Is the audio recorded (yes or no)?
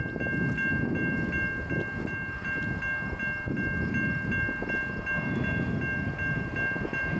yes